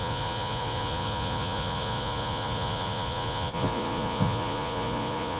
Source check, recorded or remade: remade